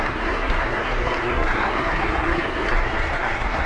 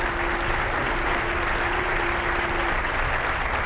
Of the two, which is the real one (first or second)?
second